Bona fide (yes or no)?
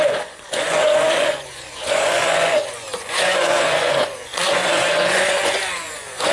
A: no